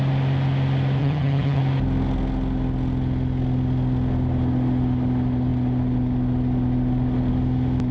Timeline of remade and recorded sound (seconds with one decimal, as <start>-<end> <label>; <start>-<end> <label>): 0.0-1.0 recorded; 1.0-1.6 remade; 1.6-7.9 recorded